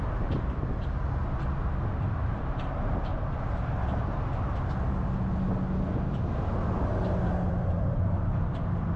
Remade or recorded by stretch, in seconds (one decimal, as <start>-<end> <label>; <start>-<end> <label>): 0.0-1.2 remade; 1.2-2.0 recorded; 2.0-3.1 remade; 3.1-7.5 recorded; 7.5-9.0 remade